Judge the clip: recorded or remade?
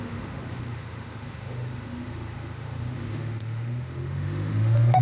remade